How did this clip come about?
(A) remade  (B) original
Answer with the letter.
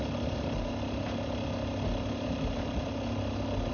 B